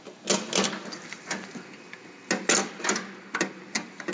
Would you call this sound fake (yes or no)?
no